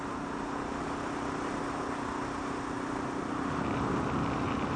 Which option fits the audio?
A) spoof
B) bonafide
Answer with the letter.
B